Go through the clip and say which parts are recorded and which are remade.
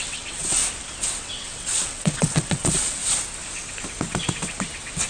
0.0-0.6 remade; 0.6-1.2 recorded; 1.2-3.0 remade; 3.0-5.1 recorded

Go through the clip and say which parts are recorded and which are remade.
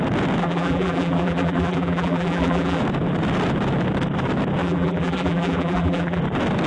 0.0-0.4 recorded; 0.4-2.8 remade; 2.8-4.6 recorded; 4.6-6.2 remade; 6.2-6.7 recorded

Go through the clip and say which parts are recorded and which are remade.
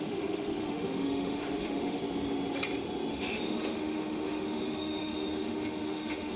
0.0-2.0 remade; 2.0-3.1 recorded; 3.1-6.4 remade